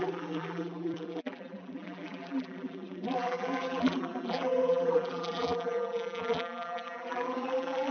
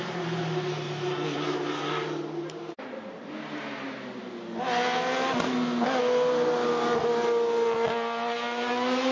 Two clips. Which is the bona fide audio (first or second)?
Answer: second